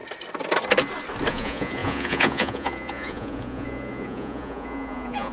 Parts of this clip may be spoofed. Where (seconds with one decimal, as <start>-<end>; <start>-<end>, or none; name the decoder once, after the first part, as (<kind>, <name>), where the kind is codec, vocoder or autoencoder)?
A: 1.3-5.3 (vocoder, Vocos)